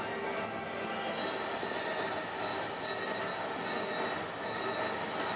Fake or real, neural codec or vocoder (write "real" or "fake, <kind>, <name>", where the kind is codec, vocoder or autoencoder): real